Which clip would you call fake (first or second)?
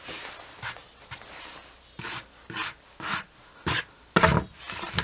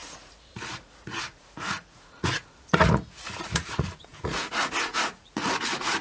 second